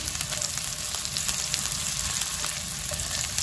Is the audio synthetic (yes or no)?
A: no